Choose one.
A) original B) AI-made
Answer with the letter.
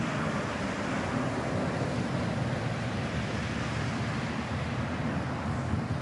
A